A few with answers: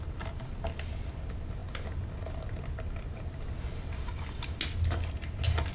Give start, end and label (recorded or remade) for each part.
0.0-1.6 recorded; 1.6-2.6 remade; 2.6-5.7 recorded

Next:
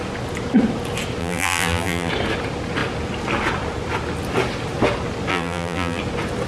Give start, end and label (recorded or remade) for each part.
0.0-1.2 recorded; 1.2-2.1 remade; 2.1-5.3 recorded; 5.3-6.0 remade; 6.0-6.5 recorded

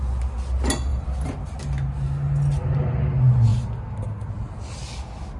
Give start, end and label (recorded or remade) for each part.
0.0-0.9 recorded; 0.9-1.6 remade; 1.6-3.5 recorded; 3.5-4.3 remade; 4.3-5.4 recorded

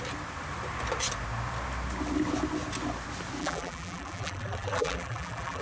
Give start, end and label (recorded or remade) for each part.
0.0-3.4 recorded; 3.4-5.6 remade